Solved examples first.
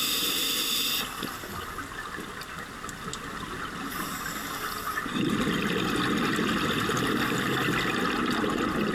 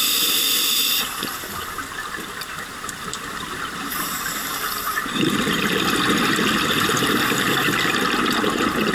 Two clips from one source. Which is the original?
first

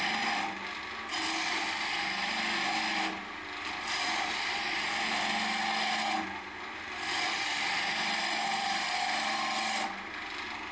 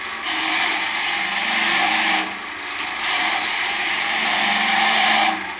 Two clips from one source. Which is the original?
first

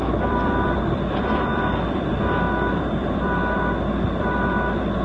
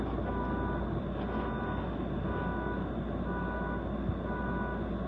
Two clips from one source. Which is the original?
second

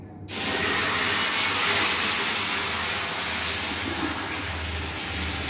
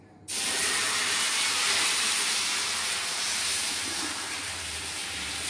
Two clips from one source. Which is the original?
first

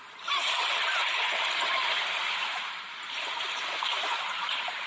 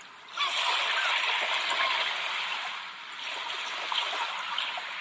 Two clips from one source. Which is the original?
second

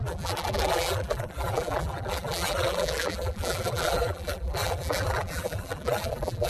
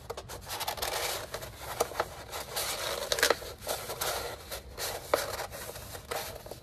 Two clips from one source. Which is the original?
second